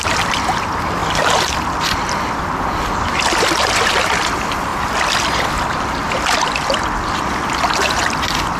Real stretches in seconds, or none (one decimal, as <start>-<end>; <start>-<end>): 4.7-5.2